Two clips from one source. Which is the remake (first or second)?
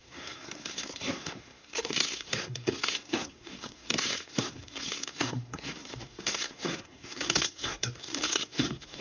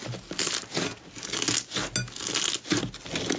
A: first